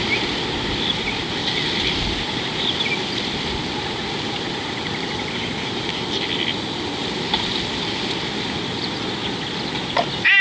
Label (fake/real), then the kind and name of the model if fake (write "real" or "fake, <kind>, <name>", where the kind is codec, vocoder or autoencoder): real